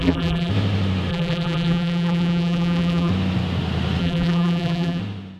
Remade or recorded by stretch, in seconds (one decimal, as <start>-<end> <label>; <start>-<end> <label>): 0.0-0.5 remade; 0.5-1.1 recorded; 1.1-3.1 remade; 3.1-4.0 recorded; 4.0-5.0 remade; 5.0-5.4 recorded

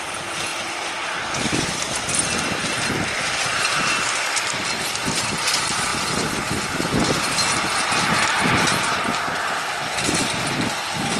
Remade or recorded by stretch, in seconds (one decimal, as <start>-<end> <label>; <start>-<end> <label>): 0.0-11.2 recorded

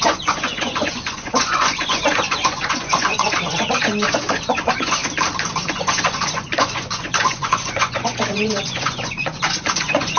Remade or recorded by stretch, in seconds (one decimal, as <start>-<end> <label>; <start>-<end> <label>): 0.0-5.0 remade; 5.0-5.6 recorded; 5.6-10.2 remade